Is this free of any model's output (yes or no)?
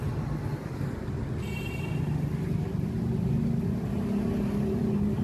yes